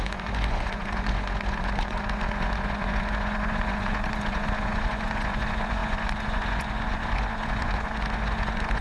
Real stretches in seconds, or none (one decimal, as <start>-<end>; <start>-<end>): none